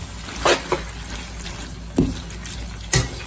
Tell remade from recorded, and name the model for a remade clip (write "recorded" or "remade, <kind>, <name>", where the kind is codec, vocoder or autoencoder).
recorded